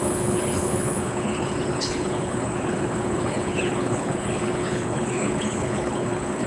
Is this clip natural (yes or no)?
no